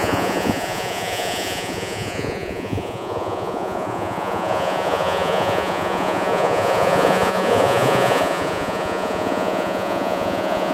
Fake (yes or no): yes